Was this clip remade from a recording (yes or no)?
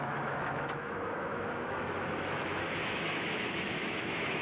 yes